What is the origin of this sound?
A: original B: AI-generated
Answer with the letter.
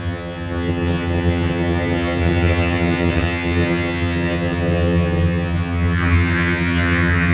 B